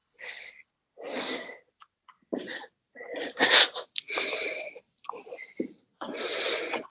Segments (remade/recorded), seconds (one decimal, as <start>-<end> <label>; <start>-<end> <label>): 0.0-0.7 remade; 0.7-6.9 recorded